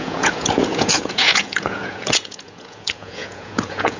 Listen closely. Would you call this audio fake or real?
fake